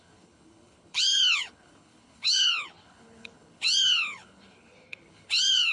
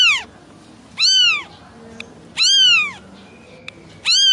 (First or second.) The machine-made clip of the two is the first